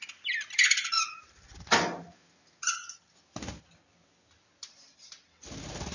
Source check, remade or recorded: recorded